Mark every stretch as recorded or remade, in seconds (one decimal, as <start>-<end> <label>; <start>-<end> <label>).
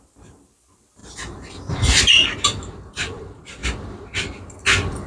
0.0-1.0 remade; 1.0-2.9 recorded; 2.9-3.6 remade; 3.6-5.1 recorded